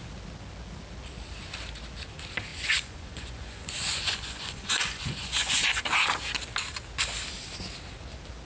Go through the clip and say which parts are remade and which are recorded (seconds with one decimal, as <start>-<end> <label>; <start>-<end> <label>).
0.0-2.5 recorded; 2.5-5.8 remade; 5.8-8.4 recorded